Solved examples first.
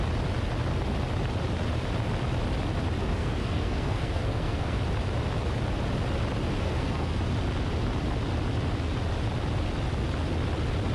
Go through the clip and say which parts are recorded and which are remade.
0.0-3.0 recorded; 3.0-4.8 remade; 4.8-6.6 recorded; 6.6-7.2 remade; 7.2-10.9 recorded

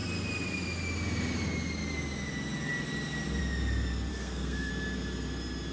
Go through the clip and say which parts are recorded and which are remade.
0.0-4.1 recorded; 4.1-4.7 remade; 4.7-5.7 recorded

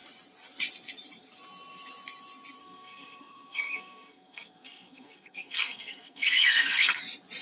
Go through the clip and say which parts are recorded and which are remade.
0.0-2.6 recorded; 2.6-7.0 remade; 7.0-7.4 recorded

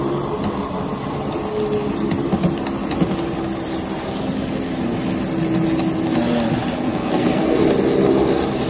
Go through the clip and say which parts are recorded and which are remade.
0.0-6.9 recorded; 6.9-7.6 remade; 7.6-8.7 recorded